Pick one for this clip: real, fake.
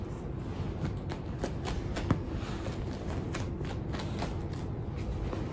real